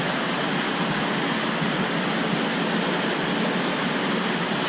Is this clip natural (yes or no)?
yes